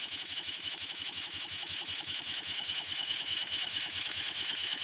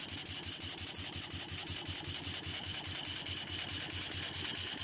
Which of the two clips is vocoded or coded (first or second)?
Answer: first